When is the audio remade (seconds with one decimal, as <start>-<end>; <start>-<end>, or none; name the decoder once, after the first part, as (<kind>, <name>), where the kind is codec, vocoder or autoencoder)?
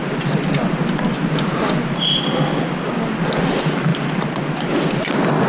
none